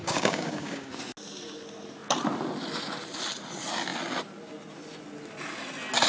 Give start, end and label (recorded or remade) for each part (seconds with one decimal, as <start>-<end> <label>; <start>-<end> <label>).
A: 0.0-0.9 remade; 0.9-6.1 recorded